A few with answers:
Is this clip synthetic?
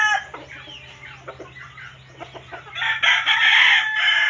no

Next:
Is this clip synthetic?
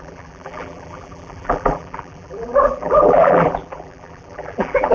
yes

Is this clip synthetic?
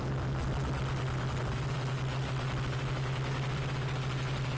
no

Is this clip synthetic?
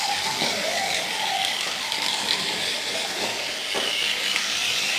yes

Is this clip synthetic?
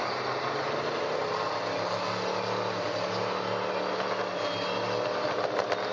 no